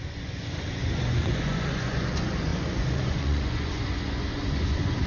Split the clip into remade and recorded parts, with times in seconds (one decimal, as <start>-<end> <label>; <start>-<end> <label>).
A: 0.0-5.1 remade